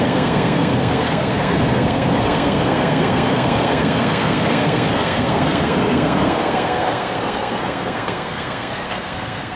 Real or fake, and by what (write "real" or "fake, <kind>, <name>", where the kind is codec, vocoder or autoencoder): fake, codec, SNAC